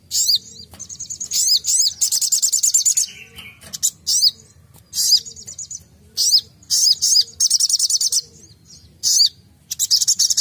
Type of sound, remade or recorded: recorded